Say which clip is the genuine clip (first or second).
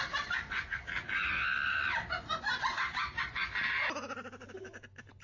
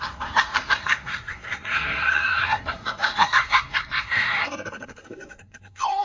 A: first